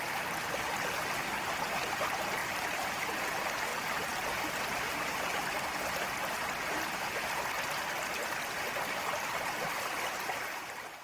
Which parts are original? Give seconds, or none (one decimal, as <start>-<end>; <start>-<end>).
0.0-2.4; 3.2-3.7; 5.6-11.0